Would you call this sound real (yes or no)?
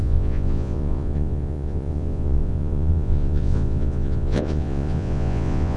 no